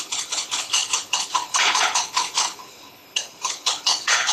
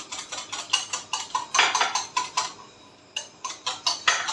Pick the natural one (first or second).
second